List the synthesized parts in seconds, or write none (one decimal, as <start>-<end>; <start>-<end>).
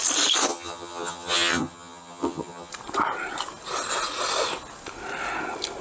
0.5-2.7